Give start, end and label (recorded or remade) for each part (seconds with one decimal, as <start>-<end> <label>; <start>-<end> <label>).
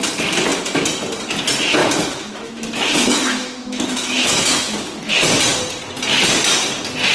0.0-1.8 recorded; 1.8-5.1 remade; 5.1-7.1 recorded